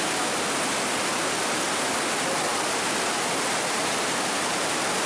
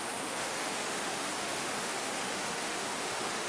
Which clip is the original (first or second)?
first